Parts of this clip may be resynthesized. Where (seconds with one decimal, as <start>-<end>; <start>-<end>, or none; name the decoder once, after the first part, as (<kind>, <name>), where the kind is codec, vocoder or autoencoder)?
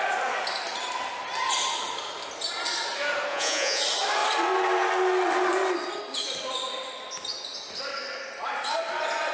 3.3-3.8 (vocoder, Vocos)